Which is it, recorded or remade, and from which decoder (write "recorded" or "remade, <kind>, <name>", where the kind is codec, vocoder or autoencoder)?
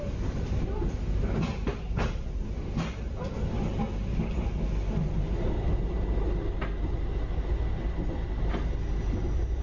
recorded